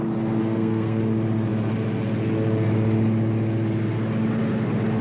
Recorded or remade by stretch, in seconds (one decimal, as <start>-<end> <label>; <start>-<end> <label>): 0.0-0.4 recorded; 0.4-1.0 remade; 1.0-5.0 recorded